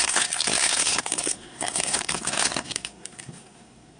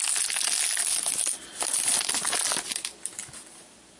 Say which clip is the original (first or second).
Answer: second